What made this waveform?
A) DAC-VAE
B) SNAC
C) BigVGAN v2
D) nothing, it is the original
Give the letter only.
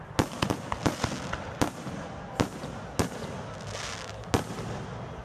D